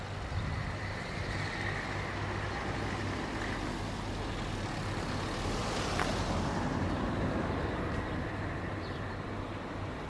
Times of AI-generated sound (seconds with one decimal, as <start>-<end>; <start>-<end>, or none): 0.6-1.3; 5.6-8.8